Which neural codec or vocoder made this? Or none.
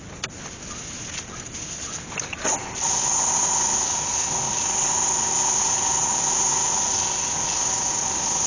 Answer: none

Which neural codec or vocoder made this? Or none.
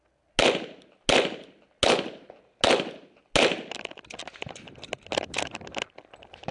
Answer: none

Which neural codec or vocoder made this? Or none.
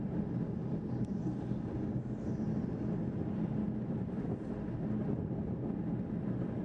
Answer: none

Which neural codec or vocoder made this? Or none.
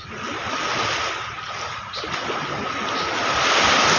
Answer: none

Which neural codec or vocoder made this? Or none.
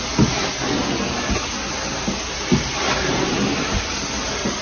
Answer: none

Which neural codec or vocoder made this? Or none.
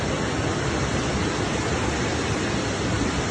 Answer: none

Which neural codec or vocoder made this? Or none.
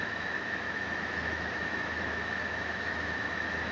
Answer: autoencoder, DAC-VAE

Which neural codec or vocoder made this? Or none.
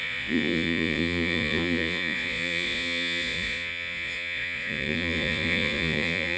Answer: vocoder, Vocos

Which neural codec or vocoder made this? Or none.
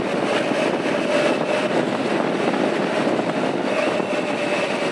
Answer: none